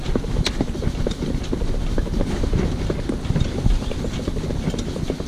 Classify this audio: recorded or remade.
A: recorded